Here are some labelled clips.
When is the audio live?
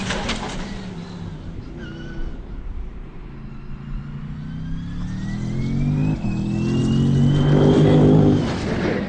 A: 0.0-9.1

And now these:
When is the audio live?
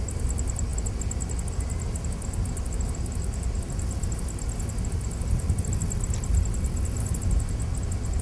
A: 0.0-8.2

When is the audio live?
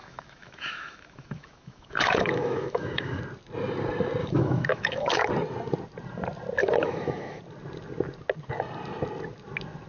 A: 3.2-4.2; 5.3-6.6; 7.4-9.9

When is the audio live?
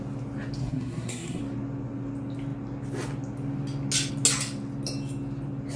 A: 0.0-0.6; 1.4-5.8